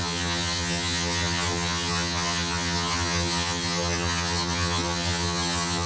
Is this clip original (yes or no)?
no